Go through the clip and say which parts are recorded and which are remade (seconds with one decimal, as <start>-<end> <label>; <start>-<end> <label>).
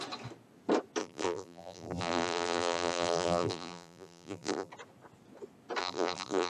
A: 0.0-1.0 recorded; 1.0-4.7 remade; 4.7-5.8 recorded; 5.8-6.5 remade